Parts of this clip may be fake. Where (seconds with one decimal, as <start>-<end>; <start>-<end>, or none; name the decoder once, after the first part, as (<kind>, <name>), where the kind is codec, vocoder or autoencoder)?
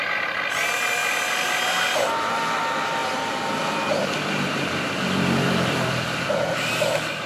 1.0-2.3 (vocoder, BigVGAN v2); 3.0-6.7